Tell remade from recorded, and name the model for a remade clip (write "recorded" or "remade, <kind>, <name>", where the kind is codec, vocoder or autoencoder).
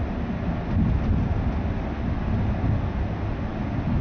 recorded